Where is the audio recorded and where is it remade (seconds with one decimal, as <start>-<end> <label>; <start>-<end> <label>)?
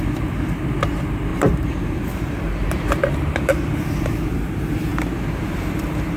0.0-1.3 recorded; 1.3-3.3 remade; 3.3-6.2 recorded